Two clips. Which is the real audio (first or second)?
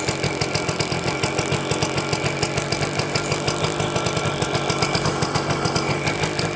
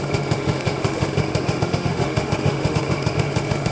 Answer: first